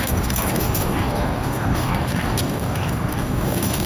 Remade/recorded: remade